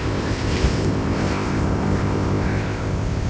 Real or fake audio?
fake